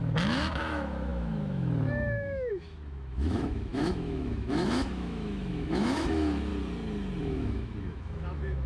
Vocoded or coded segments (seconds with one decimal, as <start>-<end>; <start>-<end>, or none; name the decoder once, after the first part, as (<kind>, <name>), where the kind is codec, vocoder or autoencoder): 0.0-6.5 (autoencoder, DAC-VAE); 7.2-8.7

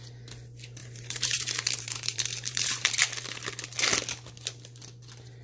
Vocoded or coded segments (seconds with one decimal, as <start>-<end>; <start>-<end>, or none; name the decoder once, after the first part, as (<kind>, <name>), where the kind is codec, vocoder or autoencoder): 0.8-2.9 (vocoder, BigVGAN v2)

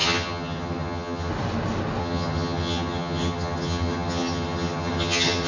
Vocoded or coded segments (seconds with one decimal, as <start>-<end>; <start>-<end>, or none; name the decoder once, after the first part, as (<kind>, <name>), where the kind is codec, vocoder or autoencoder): 0.0-1.3 (vocoder, HiFi-GAN); 2.0-5.5

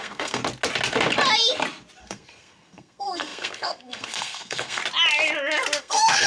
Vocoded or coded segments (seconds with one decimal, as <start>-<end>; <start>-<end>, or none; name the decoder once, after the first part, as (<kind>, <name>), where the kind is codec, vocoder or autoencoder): 0.0-0.4 (codec, SNAC); 2.0-4.8; 5.8-6.3

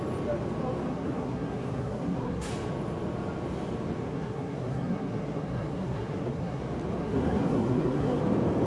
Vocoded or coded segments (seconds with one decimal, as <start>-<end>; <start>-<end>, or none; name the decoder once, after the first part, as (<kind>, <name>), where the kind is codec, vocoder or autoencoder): 0.9-2.5 (codec, SNAC); 4.0-6.6; 7.0-8.2